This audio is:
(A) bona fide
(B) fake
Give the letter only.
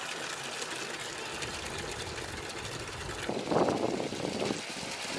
A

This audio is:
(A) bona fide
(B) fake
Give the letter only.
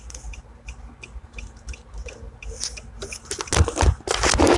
A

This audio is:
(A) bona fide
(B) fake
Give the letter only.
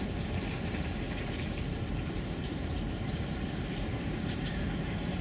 B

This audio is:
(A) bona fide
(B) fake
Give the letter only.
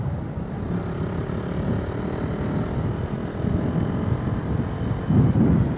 A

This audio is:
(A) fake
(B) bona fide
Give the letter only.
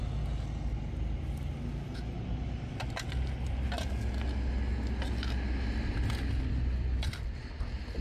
B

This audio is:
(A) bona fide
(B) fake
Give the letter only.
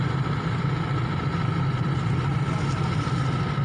A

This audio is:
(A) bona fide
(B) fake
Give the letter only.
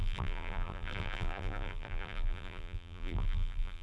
B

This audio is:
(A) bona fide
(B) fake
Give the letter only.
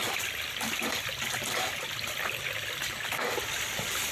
A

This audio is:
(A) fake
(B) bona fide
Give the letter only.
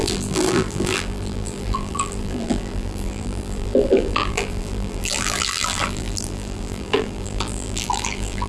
A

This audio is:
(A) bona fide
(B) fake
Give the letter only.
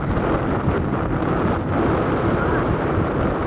B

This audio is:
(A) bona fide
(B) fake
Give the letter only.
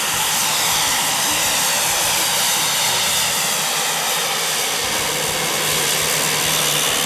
A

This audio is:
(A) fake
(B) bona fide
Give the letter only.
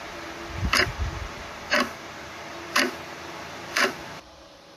A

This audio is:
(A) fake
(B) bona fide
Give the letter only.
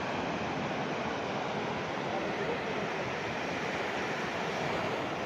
B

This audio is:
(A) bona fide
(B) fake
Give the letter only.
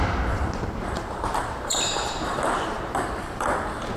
B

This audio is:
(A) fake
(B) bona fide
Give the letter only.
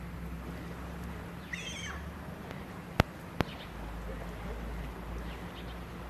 B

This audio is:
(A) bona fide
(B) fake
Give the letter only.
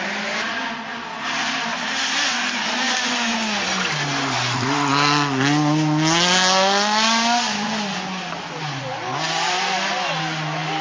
A